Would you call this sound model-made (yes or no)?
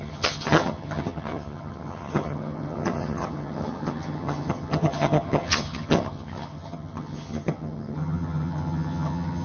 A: yes